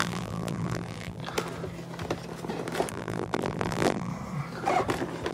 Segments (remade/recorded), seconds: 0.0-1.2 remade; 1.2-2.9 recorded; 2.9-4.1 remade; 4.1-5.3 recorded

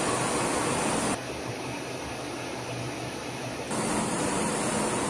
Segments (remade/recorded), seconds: 0.0-5.1 recorded

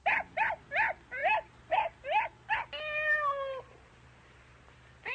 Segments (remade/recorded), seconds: 0.0-5.1 recorded

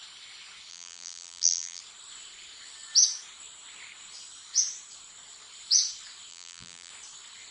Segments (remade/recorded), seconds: 0.0-0.7 recorded; 0.7-1.8 remade; 1.8-6.3 recorded; 6.3-6.9 remade; 6.9-7.5 recorded